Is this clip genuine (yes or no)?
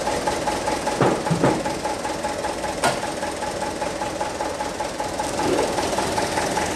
yes